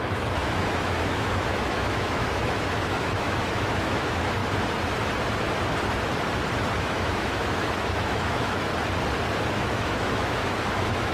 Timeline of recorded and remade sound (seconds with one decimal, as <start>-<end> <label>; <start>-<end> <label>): 0.0-4.4 remade; 4.4-6.8 recorded; 6.8-8.7 remade; 8.7-9.5 recorded; 9.5-11.1 remade